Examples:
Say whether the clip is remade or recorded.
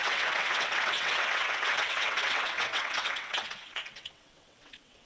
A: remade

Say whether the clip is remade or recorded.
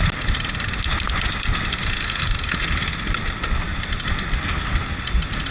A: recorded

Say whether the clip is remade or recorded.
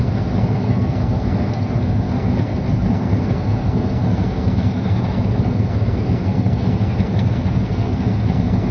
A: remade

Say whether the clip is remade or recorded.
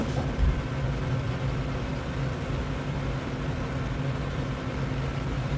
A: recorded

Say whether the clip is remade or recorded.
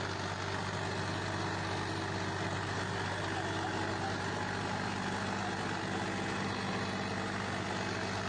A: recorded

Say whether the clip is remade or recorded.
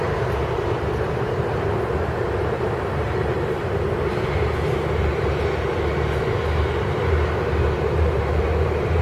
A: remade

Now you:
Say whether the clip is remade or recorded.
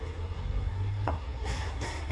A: remade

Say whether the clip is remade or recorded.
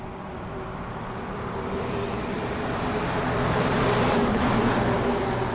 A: remade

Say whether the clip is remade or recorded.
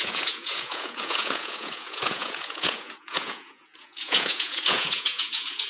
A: remade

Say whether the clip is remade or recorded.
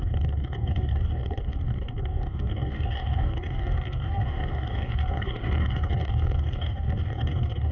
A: remade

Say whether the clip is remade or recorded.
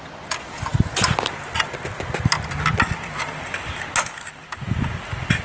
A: recorded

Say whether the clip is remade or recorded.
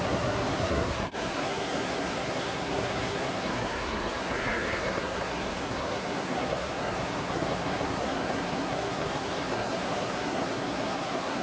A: remade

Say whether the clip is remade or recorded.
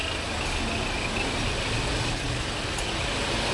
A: recorded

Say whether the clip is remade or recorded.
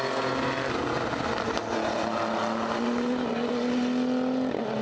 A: recorded